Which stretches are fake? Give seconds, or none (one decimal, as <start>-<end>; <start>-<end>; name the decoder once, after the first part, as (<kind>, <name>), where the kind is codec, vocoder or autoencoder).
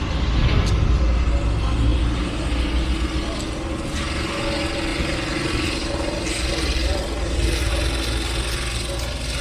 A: 4.9-7.7 (vocoder, BigVGAN v2)